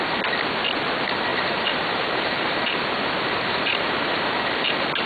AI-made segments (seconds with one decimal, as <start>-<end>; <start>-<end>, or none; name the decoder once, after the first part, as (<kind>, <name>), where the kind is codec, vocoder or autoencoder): 1.3-4.4 (vocoder, BigVGAN v2)